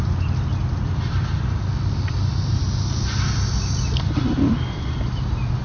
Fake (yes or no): no